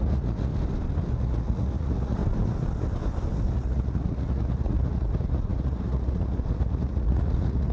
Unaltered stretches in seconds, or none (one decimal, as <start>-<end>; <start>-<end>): 0.5-1.1; 2.2-3.5